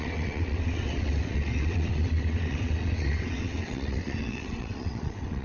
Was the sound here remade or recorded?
remade